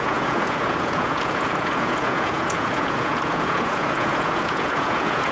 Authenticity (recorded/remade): remade